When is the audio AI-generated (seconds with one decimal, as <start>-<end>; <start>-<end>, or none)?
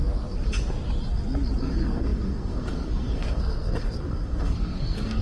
1.6-5.2